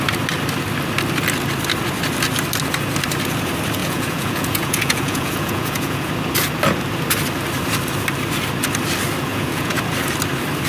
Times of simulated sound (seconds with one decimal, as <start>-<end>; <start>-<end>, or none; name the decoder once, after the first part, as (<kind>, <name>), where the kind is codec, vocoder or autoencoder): 3.8-6.1 (vocoder, Vocos); 9.3-9.8